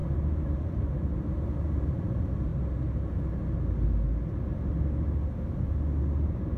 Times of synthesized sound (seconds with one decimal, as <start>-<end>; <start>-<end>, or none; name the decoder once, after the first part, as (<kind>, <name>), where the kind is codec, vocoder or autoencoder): 0.0-2.5 (vocoder, BigVGAN v2)